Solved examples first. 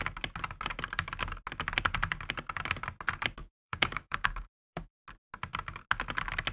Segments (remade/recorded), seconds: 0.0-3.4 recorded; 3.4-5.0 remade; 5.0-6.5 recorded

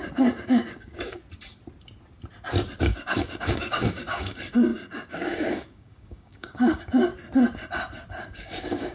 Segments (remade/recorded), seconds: 0.0-1.2 remade; 1.2-2.8 recorded; 2.8-7.1 remade; 7.1-8.2 recorded; 8.2-8.9 remade